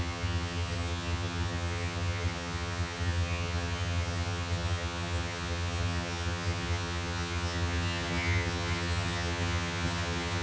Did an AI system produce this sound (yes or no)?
yes